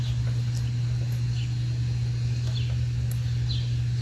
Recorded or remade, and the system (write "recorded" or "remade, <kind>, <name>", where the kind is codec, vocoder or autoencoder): recorded